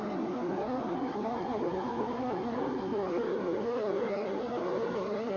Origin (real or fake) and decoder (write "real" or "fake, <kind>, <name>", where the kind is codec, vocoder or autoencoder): fake, codec, SNAC